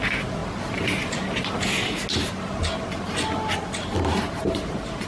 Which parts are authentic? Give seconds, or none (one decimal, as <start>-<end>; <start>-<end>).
0.0-5.1

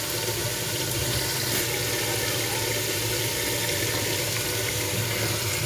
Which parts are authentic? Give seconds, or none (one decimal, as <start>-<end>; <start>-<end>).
0.0-5.7

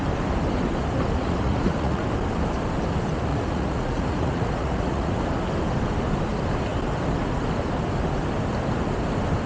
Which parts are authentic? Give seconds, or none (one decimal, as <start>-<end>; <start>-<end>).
0.0-1.2; 2.0-3.3; 5.2-9.5

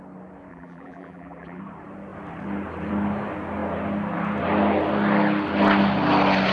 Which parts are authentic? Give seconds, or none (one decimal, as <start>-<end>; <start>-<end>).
0.0-0.5; 1.6-6.5

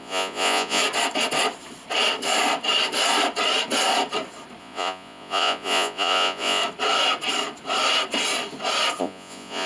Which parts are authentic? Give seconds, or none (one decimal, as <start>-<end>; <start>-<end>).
0.8-4.6; 6.6-9.0

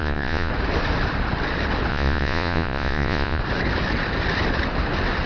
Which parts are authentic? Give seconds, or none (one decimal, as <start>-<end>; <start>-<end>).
0.5-1.9; 3.4-5.3

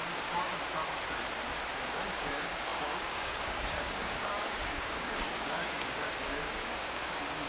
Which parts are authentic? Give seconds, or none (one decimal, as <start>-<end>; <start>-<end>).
0.5-2.2